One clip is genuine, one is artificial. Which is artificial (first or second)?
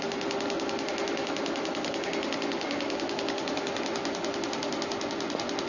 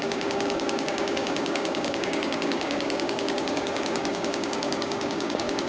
second